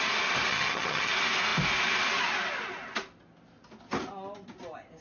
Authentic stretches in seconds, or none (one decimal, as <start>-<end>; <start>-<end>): 0.0-0.5; 1.1-5.0